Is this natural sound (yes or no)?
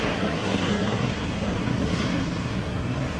no